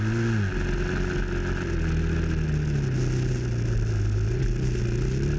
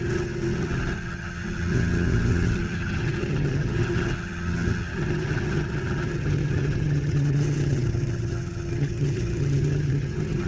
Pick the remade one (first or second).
second